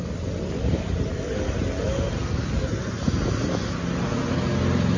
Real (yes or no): yes